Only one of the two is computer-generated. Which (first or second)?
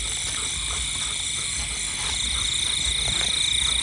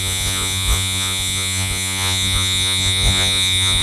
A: second